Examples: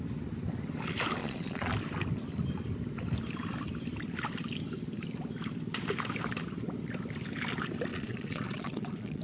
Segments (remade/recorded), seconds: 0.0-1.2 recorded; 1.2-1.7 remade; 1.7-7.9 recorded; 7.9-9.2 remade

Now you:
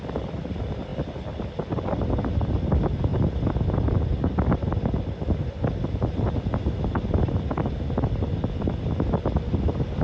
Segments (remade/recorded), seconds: 0.0-10.0 recorded

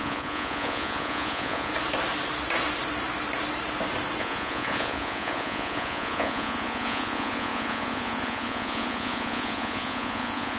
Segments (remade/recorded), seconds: 0.0-1.7 remade; 1.7-4.2 recorded; 4.2-10.6 remade

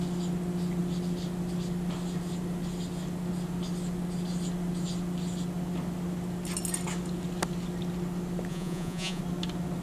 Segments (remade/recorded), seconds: 0.0-8.5 recorded; 8.5-9.2 remade; 9.2-9.8 recorded

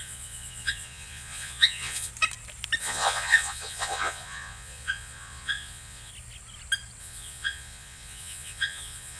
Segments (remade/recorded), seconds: 0.0-2.1 remade; 2.1-2.8 recorded; 2.8-6.1 remade; 6.1-7.0 recorded; 7.0-9.2 remade

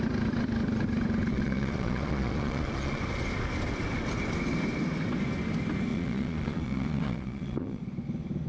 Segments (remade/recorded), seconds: 0.0-1.3 recorded; 1.3-3.0 remade; 3.0-5.9 recorded; 5.9-7.8 remade; 7.8-8.5 recorded

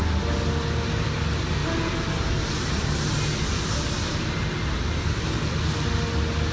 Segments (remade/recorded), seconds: 0.0-6.5 recorded